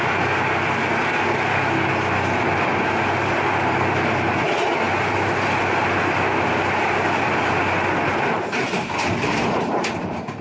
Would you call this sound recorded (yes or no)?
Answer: yes